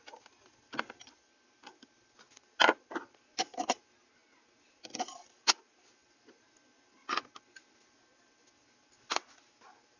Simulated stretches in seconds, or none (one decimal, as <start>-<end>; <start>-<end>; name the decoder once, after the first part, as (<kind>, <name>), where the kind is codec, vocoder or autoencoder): none